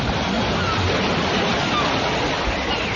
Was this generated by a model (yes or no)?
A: no